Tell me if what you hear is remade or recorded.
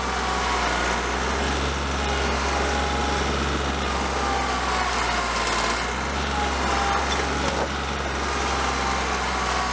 recorded